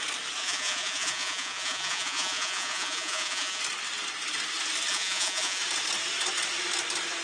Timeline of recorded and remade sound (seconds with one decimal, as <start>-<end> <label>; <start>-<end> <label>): 0.0-0.4 recorded; 0.4-3.6 remade; 3.6-4.9 recorded; 4.9-5.6 remade; 5.6-7.2 recorded